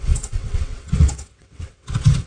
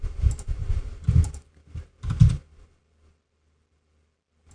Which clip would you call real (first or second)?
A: second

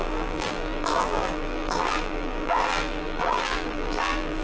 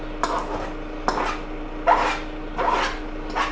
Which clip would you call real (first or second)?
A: second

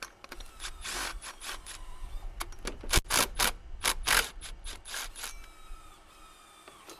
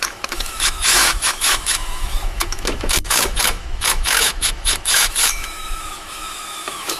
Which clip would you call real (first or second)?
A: first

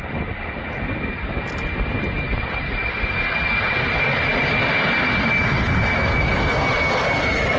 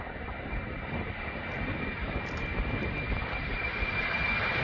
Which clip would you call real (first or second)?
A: first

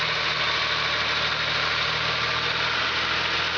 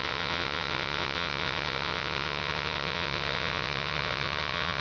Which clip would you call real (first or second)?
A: first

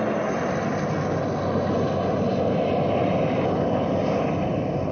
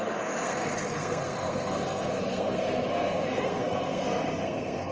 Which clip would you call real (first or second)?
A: first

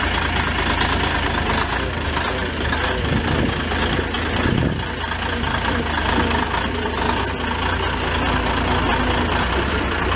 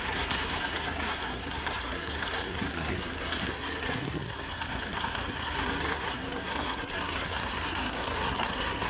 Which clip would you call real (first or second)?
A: first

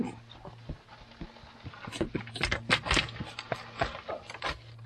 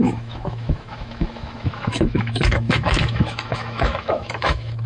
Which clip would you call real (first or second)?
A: first